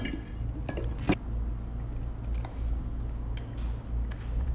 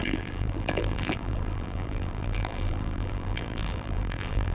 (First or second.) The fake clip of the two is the second